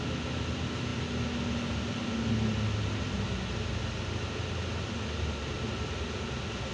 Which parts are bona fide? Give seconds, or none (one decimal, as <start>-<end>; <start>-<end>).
0.0-6.7